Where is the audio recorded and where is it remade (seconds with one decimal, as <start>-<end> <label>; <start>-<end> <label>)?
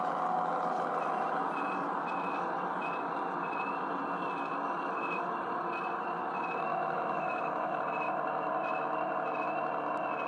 0.0-6.7 recorded; 6.7-7.8 remade; 7.8-10.3 recorded